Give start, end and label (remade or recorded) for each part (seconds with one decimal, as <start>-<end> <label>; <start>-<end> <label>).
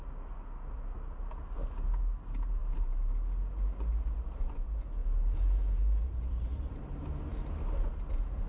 0.0-5.0 recorded; 5.0-6.7 remade; 6.7-8.5 recorded